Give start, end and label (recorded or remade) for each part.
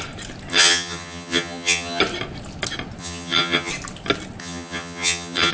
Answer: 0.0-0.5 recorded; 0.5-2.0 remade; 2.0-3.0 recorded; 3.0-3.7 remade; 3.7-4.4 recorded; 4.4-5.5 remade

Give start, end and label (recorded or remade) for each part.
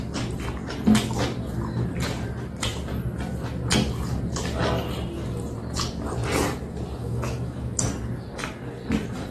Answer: 0.0-7.0 recorded; 7.0-7.8 remade; 7.8-9.3 recorded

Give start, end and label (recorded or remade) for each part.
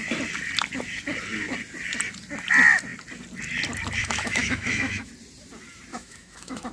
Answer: 0.0-4.0 recorded; 4.0-5.1 remade; 5.1-5.9 recorded; 5.9-6.7 remade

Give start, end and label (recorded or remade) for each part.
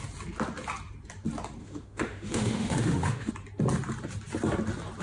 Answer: 0.0-1.6 recorded; 1.6-3.3 remade; 3.3-5.0 recorded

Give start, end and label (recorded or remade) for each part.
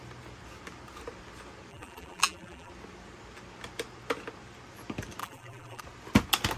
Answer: 0.0-1.7 recorded; 1.7-2.7 remade; 2.7-5.2 recorded; 5.2-5.8 remade; 5.8-6.6 recorded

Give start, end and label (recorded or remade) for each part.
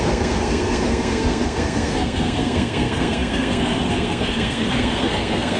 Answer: 0.0-5.6 remade